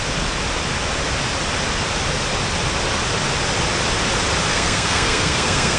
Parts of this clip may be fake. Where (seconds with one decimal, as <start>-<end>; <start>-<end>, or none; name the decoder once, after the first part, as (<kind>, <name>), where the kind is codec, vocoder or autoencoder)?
4.5-5.8 (codec, SNAC)